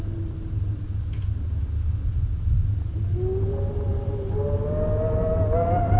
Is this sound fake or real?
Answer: real